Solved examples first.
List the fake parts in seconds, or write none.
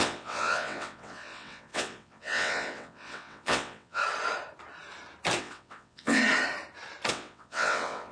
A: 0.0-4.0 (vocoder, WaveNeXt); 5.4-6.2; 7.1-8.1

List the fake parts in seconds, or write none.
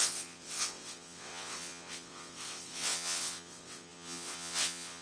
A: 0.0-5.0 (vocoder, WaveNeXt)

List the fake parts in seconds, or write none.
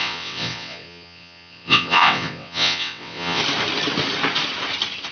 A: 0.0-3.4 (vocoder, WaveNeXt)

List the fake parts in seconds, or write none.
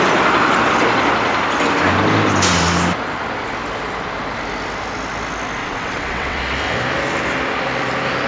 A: 5.6-6.4 (vocoder, WaveNeXt)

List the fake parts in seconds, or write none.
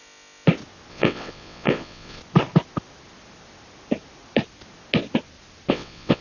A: 0.9-2.2 (vocoder, WaveNeXt); 5.7-6.2